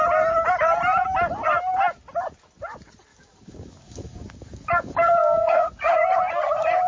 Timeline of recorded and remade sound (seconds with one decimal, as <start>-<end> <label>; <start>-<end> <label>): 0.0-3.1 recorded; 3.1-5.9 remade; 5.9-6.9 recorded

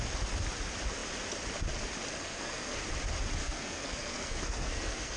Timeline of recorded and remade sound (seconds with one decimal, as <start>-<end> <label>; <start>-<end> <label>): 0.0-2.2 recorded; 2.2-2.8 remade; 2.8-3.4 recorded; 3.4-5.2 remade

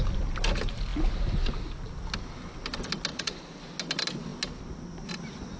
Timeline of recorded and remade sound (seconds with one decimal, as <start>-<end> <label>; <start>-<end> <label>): 0.0-3.1 recorded; 3.1-3.6 remade; 3.6-5.6 recorded

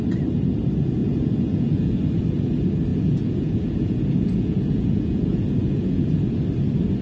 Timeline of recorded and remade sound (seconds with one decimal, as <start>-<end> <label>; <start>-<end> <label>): 0.0-1.0 recorded; 1.0-1.9 remade; 1.9-2.9 recorded; 2.9-6.3 remade; 6.3-7.0 recorded

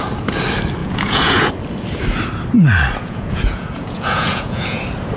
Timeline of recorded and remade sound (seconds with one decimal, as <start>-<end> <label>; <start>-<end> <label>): 0.0-0.8 recorded; 0.8-1.5 remade; 1.5-3.0 recorded; 3.0-4.8 remade; 4.8-5.2 recorded

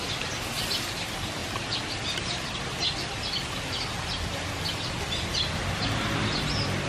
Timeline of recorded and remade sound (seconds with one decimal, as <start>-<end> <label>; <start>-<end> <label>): 0.0-6.9 recorded

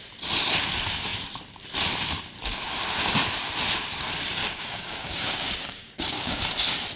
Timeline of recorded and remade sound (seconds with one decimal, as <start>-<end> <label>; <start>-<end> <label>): 0.0-4.4 recorded; 4.4-6.4 remade; 6.4-7.0 recorded

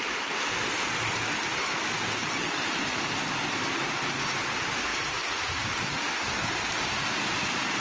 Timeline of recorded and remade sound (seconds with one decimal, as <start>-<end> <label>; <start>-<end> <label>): 0.0-2.2 recorded; 2.2-3.8 remade; 3.8-4.9 recorded; 4.9-6.3 remade; 6.3-7.8 recorded